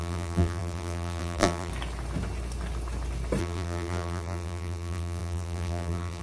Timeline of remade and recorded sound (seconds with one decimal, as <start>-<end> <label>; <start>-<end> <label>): 0.0-1.7 remade; 1.7-3.4 recorded; 3.4-6.2 remade